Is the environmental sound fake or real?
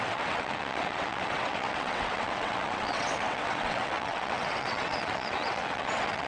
fake